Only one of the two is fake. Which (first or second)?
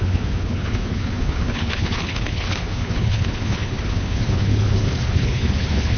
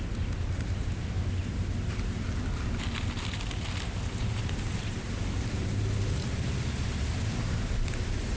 first